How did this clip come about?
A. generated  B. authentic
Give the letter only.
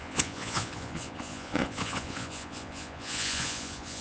A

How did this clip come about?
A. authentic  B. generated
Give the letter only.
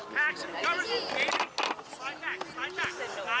A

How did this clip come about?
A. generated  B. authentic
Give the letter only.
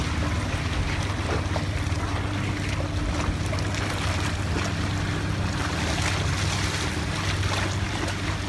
B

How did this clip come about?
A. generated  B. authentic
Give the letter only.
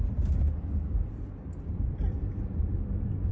A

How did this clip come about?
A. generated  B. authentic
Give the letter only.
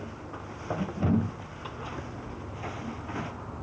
B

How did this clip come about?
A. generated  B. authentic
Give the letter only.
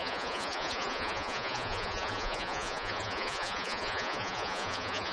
A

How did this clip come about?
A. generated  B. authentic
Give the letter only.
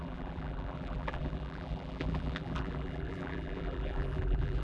A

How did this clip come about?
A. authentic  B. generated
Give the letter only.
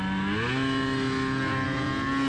A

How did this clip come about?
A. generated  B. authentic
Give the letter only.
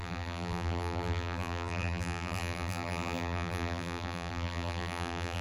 A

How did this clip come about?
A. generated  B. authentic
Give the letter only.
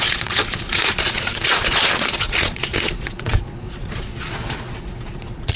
A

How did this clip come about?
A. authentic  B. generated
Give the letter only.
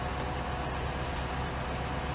A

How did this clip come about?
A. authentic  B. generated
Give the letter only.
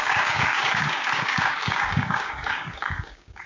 B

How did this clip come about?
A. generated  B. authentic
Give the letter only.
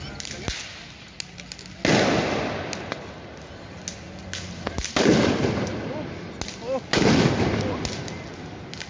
B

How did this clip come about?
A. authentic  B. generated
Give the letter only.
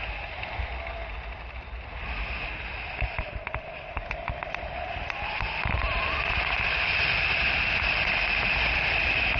A